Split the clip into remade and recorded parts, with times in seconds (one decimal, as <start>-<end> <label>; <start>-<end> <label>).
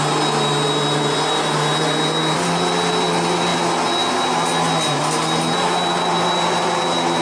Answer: 0.0-7.2 recorded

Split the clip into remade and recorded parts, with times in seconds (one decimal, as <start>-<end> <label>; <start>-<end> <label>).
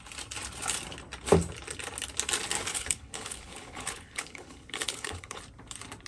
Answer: 0.0-2.7 recorded; 2.7-5.4 remade; 5.4-6.1 recorded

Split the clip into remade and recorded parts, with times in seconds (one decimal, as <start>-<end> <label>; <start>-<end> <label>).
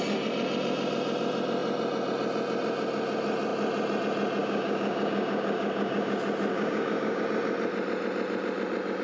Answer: 0.0-4.4 recorded; 4.4-6.1 remade; 6.1-6.5 recorded; 6.5-7.2 remade; 7.2-9.0 recorded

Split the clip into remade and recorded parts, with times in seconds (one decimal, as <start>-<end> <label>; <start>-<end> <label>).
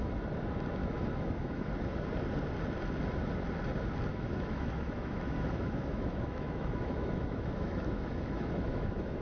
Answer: 0.0-0.8 recorded; 0.8-1.7 remade; 1.7-4.1 recorded; 4.1-9.2 remade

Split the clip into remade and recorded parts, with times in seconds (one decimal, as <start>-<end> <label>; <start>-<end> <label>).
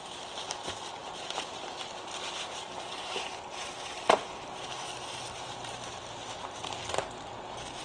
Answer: 0.0-6.8 remade; 6.8-7.8 recorded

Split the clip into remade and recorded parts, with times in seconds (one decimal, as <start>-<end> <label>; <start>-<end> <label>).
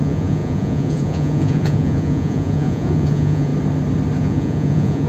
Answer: 0.0-3.5 remade; 3.5-4.2 recorded; 4.2-5.1 remade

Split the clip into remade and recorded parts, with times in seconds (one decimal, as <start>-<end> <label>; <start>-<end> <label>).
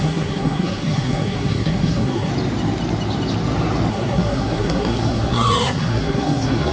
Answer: 0.0-2.3 remade; 2.3-3.9 recorded; 3.9-6.7 remade